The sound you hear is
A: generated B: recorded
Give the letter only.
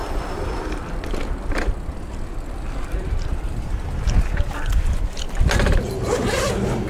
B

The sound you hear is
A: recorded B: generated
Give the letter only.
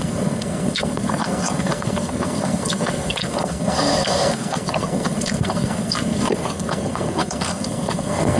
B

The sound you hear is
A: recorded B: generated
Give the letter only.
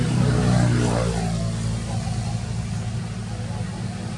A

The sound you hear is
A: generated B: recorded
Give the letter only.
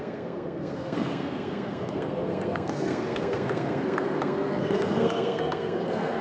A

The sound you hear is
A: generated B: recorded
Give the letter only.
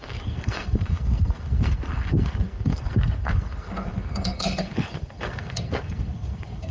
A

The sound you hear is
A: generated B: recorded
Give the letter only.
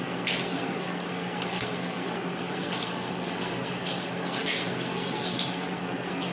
A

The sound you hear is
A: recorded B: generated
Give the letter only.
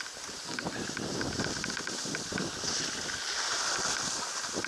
A